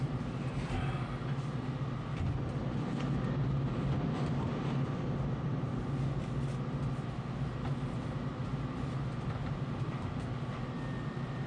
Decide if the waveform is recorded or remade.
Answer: recorded